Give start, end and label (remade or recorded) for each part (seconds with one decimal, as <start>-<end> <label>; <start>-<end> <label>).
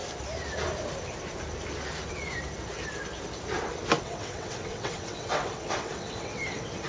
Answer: 0.0-4.0 recorded; 4.0-6.9 remade